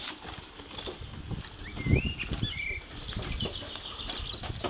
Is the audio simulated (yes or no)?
no